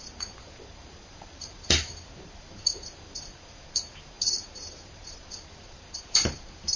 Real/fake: fake